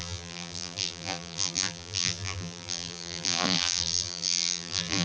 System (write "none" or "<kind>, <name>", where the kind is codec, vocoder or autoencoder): vocoder, BigVGAN v2